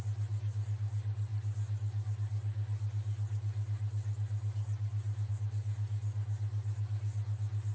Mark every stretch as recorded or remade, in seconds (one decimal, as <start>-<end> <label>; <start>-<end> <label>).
0.0-7.7 recorded